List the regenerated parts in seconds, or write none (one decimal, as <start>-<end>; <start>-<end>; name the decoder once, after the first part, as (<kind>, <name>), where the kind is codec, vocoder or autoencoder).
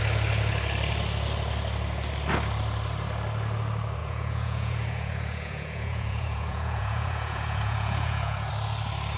4.0-8.5 (vocoder, Vocos)